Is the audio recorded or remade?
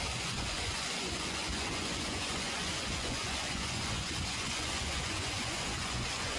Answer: remade